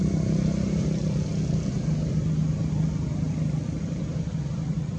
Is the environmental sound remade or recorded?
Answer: recorded